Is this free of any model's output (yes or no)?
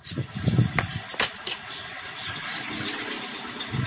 yes